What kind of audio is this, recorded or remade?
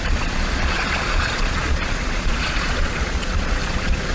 remade